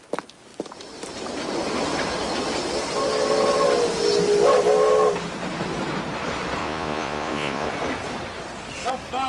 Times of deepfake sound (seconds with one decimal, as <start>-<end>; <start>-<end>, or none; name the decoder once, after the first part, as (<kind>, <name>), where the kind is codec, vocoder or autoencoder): 6.6-7.7 (vocoder, Vocos)